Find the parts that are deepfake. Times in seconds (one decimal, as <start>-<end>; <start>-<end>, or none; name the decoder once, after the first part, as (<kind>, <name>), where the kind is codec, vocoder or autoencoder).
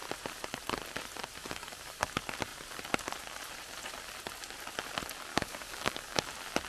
1.4-2.0 (codec, DAC); 5.3-6.2